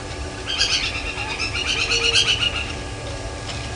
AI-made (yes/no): no